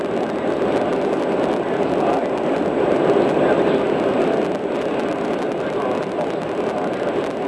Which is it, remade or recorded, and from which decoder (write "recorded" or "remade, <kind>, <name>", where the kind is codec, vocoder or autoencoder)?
recorded